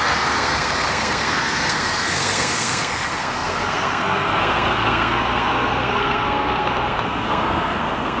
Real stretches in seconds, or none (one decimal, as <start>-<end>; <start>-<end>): none